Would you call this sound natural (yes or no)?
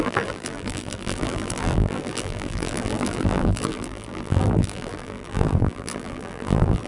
no